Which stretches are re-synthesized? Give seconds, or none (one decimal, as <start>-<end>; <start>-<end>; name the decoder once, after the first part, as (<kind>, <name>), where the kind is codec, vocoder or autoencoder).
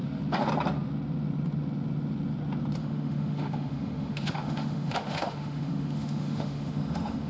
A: 2.8-7.3 (autoencoder, DAC-VAE)